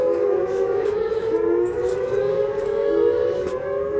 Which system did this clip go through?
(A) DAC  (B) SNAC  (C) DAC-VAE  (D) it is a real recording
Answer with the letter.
A